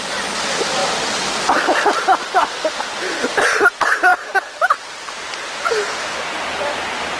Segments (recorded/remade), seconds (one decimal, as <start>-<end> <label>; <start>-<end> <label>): 0.0-7.2 recorded